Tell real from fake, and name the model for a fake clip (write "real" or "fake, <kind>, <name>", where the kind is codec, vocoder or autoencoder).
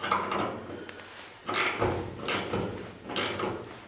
real